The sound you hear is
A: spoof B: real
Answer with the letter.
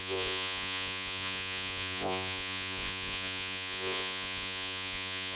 A